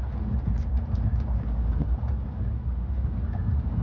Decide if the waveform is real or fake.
real